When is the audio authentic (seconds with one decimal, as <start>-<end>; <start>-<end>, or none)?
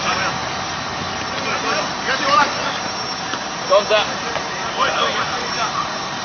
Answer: 0.4-4.1